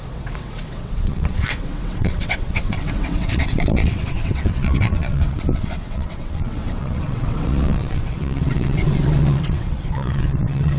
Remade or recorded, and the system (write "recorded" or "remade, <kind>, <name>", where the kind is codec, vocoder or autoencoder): remade, vocoder, WaveNeXt